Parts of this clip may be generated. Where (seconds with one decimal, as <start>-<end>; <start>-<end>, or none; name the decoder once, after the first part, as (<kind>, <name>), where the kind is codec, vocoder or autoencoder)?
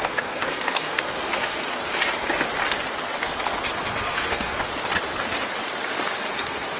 0.0-1.8 (codec, SNAC); 3.9-4.7; 6.3-6.8